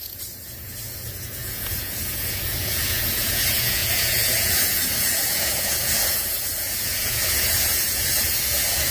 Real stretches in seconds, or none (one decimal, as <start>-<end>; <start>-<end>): none